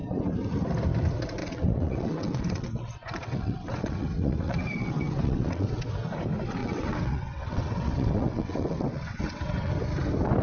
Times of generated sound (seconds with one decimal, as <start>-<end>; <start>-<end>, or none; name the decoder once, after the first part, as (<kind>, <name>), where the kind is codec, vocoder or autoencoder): 1.4-5.9 (vocoder, WaveNeXt); 6.6-9.7